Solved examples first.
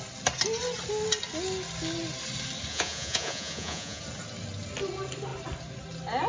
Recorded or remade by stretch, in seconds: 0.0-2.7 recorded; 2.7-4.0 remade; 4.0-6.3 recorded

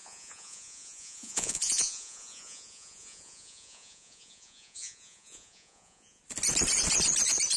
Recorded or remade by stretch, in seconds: 0.0-6.2 remade; 6.2-7.6 recorded